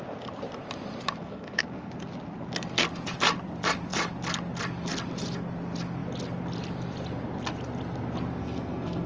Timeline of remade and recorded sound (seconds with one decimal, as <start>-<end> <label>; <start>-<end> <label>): 0.0-1.2 recorded; 1.2-1.9 remade; 1.9-8.4 recorded; 8.4-9.1 remade